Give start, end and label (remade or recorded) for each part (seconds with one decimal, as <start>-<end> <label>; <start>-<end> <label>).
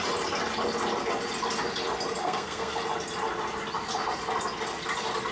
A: 0.0-2.2 recorded; 2.2-2.8 remade; 2.8-5.3 recorded